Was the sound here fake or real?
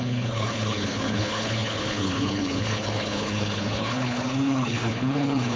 fake